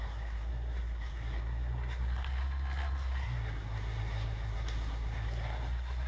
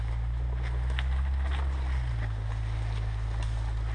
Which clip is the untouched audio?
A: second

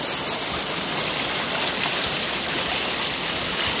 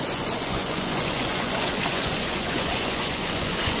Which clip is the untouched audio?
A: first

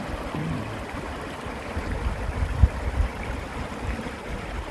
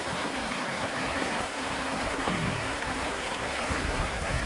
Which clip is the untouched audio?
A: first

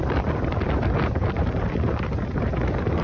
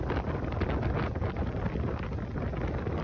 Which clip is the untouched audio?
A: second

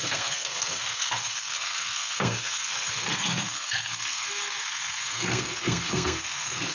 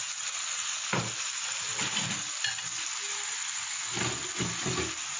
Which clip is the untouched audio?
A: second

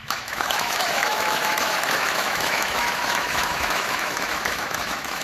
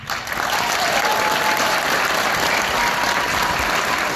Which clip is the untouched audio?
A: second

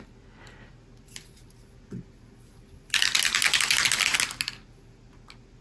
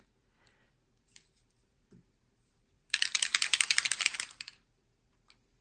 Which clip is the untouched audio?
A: first